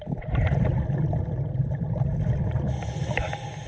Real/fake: real